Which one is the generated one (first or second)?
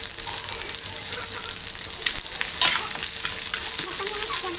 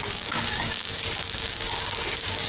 second